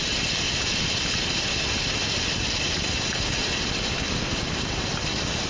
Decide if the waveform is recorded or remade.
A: recorded